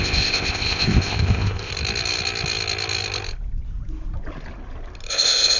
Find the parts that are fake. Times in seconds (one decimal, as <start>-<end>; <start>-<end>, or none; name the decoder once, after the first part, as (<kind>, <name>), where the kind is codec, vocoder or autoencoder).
0.0-1.7 (codec, ZipCodec); 5.1-5.6